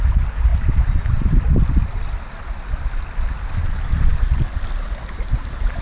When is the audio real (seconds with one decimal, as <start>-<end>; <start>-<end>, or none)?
0.0-5.8